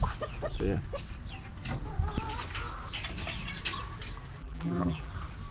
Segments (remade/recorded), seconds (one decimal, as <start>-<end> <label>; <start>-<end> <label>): 0.0-4.4 recorded; 4.4-5.1 remade; 5.1-5.5 recorded